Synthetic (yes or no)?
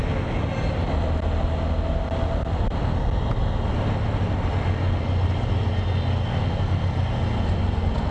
no